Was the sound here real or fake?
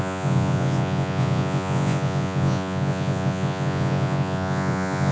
fake